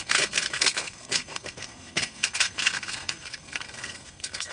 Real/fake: fake